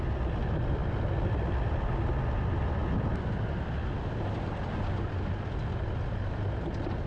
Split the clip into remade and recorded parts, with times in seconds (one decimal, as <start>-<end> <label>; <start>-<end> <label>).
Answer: 0.0-7.1 recorded